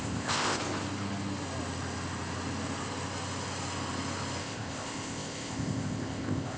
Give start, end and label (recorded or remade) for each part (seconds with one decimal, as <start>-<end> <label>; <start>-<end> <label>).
0.0-0.6 remade; 0.6-4.4 recorded; 4.4-6.6 remade